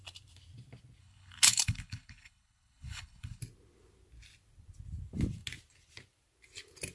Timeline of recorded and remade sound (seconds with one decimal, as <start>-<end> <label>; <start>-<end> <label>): 0.0-1.0 recorded; 1.0-3.4 remade; 3.4-6.9 recorded

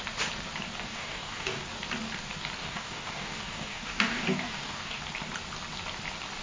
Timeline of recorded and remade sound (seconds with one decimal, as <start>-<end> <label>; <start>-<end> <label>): 0.0-0.8 recorded; 0.8-1.6 remade; 1.6-2.6 recorded; 2.6-5.0 remade; 5.0-6.4 recorded

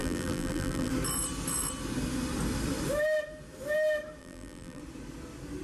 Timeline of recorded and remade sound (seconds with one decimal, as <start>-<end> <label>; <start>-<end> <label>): 0.0-0.9 remade; 0.9-4.2 recorded; 4.2-4.8 remade; 4.8-5.6 recorded

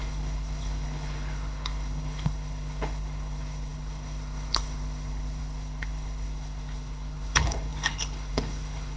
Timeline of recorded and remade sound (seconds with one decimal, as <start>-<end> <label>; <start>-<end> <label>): 0.0-9.0 remade

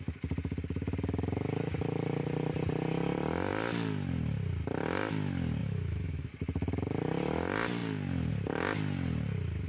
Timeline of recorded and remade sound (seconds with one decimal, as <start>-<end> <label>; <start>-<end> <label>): 0.0-5.6 recorded; 5.6-6.3 remade; 6.3-9.7 recorded

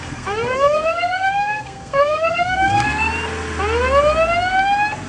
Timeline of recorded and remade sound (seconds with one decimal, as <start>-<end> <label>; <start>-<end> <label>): 0.0-3.1 remade; 3.1-5.1 recorded

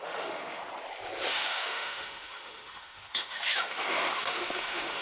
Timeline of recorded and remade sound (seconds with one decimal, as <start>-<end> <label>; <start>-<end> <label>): 0.0-0.6 remade; 0.6-1.3 recorded; 1.3-5.0 remade